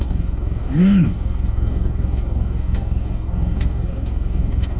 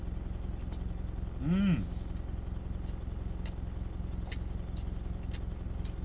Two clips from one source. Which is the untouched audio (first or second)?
second